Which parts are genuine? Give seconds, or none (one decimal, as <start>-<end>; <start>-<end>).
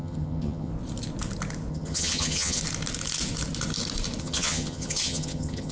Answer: 0.7-1.7; 2.6-4.2